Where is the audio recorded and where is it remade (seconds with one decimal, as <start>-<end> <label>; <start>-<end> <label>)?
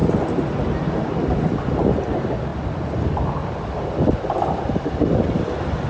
0.0-5.9 recorded